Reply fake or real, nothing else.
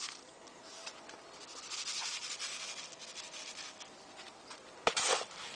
real